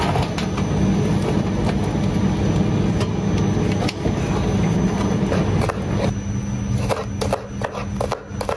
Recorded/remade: recorded